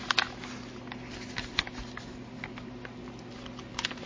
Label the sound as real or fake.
real